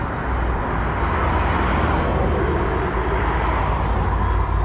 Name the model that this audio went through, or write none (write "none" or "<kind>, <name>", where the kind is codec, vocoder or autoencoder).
none